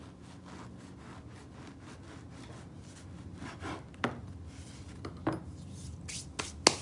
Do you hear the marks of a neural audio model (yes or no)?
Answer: no